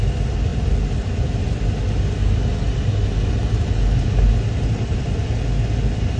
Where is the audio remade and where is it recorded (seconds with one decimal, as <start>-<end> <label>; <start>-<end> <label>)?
0.0-6.2 recorded